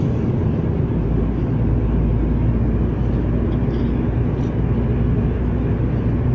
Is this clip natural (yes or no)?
yes